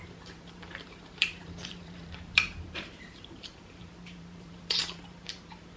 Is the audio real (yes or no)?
no